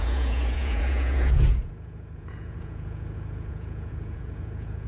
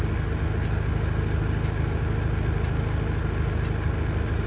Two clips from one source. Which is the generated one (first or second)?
first